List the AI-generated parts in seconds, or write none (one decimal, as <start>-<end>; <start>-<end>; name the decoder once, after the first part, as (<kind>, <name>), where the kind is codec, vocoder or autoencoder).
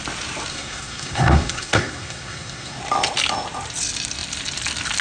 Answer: 0.5-2.8 (codec, SNAC)